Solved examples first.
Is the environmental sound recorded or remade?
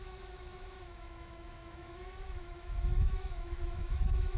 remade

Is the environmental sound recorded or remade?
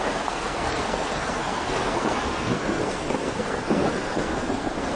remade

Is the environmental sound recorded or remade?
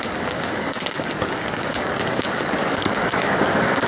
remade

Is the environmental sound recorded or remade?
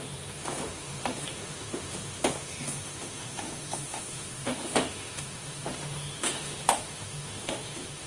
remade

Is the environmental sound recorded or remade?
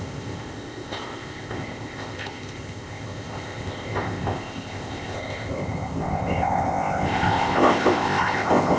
remade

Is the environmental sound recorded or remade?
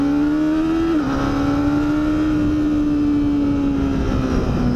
recorded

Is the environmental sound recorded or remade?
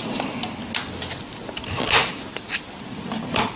recorded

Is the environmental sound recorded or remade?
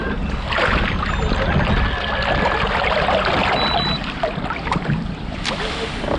recorded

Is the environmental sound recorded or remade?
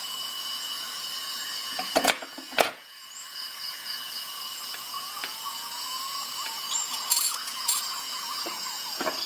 remade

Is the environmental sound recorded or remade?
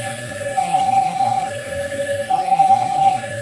remade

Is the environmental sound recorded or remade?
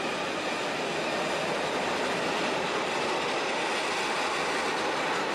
recorded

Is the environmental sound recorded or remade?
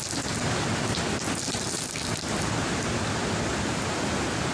recorded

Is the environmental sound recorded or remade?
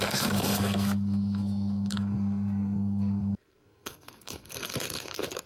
remade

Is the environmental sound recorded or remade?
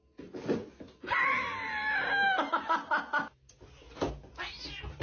recorded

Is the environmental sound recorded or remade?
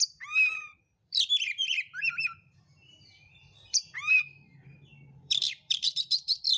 remade